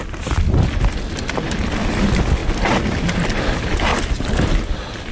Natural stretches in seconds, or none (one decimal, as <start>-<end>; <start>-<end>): 0.0-5.1